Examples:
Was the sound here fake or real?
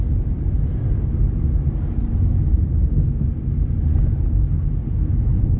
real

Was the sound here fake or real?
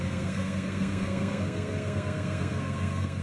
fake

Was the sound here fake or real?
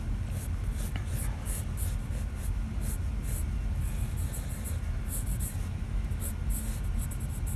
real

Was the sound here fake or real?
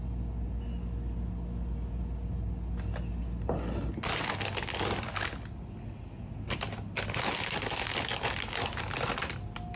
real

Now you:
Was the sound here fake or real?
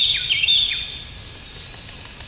real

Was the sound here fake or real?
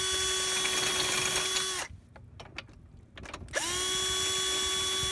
real